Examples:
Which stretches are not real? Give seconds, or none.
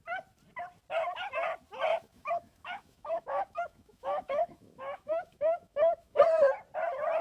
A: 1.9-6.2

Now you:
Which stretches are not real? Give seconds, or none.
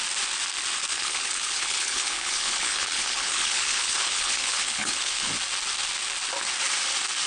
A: 0.9-5.3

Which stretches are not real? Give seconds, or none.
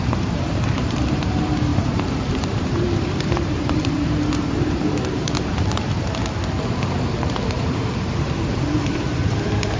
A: 0.0-6.2; 6.7-9.8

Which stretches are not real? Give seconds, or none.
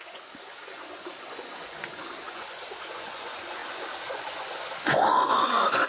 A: 0.0-5.9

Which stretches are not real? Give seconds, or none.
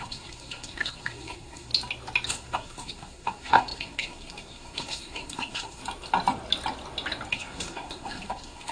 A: 0.0-1.7; 2.3-5.8; 7.3-8.7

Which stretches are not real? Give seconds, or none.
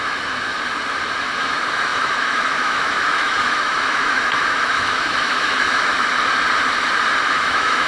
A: 0.0-0.5; 1.2-5.9; 7.4-7.9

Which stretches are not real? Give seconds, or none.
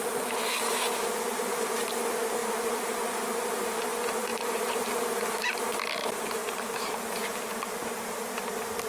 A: 1.3-1.8; 2.4-3.8; 4.3-4.9